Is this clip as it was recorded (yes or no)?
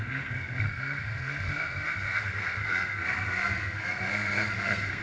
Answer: no